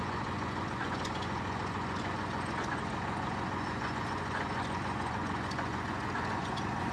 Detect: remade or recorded remade